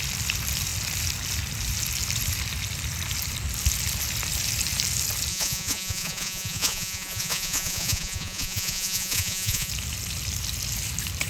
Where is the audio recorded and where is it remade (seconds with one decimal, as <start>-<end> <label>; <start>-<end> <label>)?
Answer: 0.0-5.3 recorded; 5.3-9.7 remade; 9.7-11.3 recorded